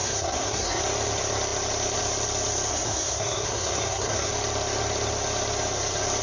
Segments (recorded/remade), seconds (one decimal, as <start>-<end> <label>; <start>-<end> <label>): 0.0-0.8 remade; 0.8-2.7 recorded; 2.7-4.3 remade; 4.3-6.2 recorded